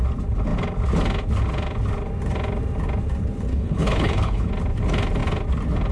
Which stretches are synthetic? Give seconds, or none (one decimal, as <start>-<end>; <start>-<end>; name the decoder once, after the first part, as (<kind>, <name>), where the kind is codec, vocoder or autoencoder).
3.5-4.5 (codec, HILCodec)